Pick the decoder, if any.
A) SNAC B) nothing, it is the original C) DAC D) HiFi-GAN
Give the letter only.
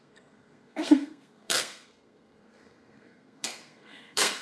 A